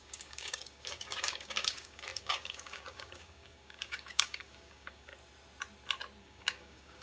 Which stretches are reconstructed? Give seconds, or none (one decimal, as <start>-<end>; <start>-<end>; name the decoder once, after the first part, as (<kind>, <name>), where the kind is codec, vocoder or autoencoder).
0.0-5.1 (codec, DAC); 6.2-7.0